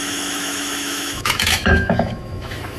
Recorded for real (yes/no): no